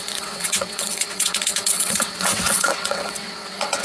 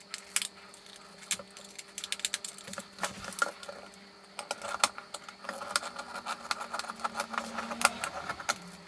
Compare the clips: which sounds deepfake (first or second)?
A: first